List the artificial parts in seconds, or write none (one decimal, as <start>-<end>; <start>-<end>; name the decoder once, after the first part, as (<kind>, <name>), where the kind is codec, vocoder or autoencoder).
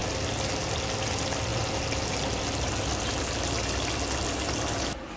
none